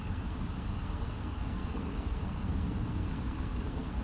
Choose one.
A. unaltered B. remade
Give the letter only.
B